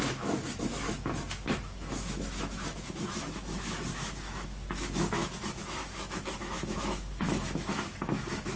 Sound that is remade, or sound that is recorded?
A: remade